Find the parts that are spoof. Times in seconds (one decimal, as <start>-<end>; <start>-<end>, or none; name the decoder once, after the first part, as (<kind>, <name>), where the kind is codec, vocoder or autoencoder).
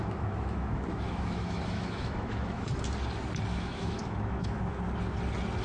0.0-2.7 (autoencoder, DAC-VAE); 3.5-4.8